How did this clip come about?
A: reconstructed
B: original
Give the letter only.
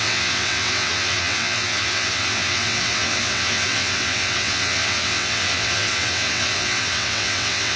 A